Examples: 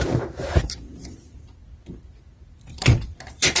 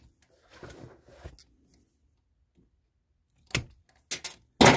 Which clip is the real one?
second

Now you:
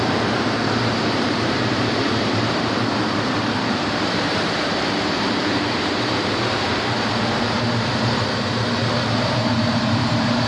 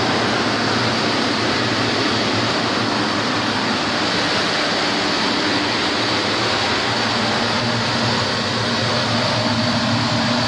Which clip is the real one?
second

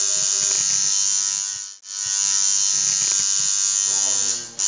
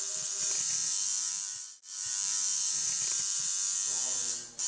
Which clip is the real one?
first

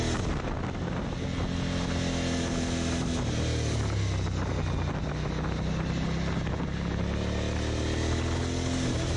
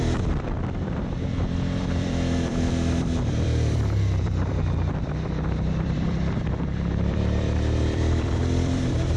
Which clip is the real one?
first